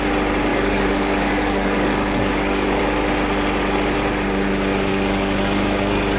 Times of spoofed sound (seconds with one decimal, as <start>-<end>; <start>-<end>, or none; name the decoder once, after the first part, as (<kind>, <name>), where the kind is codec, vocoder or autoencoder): 0.5-2.8 (codec, DAC); 4.9-6.2